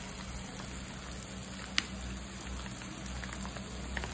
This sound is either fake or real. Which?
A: real